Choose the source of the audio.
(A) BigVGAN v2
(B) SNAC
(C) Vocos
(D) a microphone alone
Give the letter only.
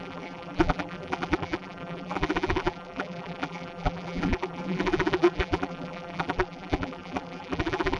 A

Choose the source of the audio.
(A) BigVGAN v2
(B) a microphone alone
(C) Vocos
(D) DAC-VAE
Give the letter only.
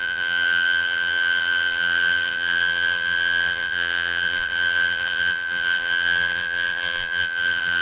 A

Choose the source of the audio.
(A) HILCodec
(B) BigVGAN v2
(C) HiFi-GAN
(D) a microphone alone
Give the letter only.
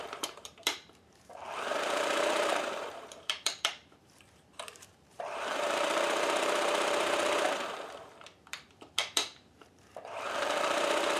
B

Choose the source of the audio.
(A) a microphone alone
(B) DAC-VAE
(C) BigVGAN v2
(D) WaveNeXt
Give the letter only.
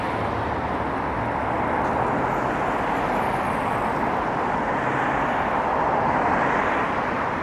A